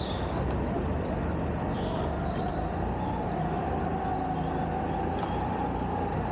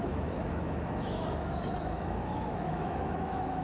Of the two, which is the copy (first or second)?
second